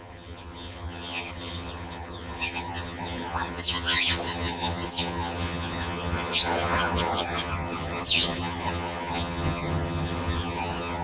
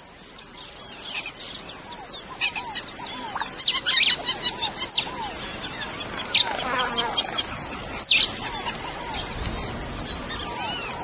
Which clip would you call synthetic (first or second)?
first